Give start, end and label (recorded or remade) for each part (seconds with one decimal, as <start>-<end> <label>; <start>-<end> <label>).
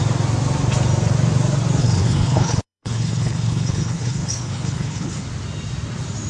0.0-1.8 recorded; 1.8-5.2 remade; 5.2-6.3 recorded